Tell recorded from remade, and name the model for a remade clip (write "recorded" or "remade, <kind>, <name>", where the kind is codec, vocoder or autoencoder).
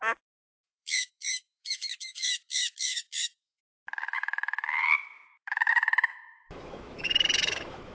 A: remade, autoencoder, DAC-VAE